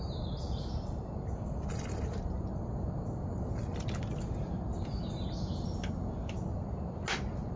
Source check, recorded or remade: recorded